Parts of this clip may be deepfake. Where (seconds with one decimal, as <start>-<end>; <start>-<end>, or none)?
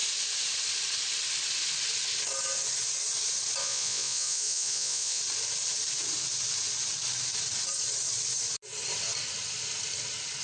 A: 3.6-5.2